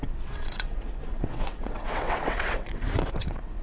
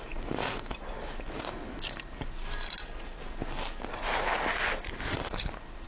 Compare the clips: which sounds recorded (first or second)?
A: second